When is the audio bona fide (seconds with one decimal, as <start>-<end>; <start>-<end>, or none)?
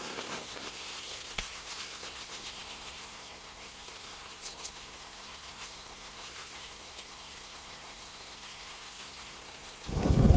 none